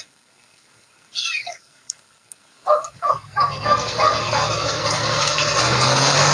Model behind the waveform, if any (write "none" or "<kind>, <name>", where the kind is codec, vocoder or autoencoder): codec, SNAC